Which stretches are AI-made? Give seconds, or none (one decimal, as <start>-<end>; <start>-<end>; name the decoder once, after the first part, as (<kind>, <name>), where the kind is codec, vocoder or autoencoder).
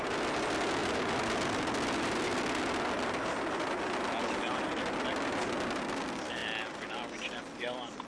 none